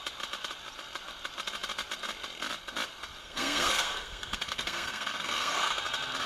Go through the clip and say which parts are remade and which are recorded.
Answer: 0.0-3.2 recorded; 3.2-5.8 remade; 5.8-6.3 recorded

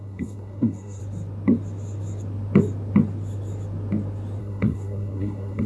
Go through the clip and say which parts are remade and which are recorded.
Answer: 0.0-1.0 remade; 1.0-4.4 recorded; 4.4-5.7 remade